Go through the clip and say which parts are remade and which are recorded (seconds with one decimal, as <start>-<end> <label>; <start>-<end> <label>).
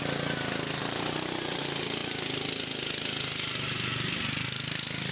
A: 0.0-0.8 recorded; 0.8-1.6 remade; 1.6-5.1 recorded